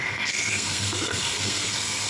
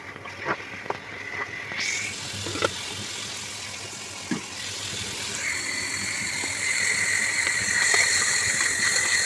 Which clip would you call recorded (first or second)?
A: second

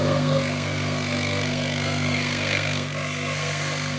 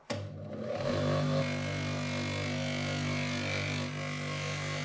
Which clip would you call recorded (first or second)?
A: second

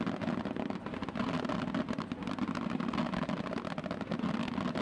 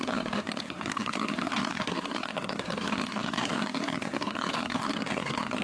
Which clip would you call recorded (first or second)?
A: first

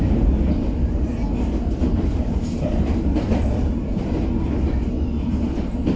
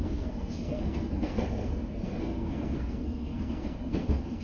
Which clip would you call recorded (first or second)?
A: first